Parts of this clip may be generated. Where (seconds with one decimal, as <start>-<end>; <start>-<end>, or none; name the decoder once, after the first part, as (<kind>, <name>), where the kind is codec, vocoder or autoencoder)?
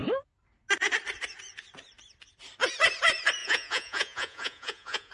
3.4-5.1 (vocoder, Vocos)